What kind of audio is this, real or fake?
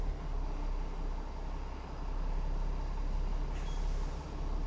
real